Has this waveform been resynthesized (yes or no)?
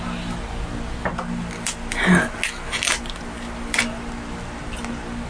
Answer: no